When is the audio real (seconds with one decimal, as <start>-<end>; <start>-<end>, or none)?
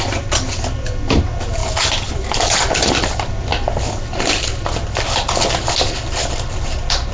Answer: 0.0-7.1